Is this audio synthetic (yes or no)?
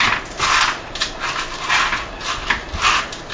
no